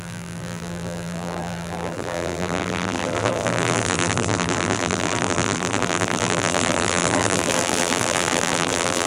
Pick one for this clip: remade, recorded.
remade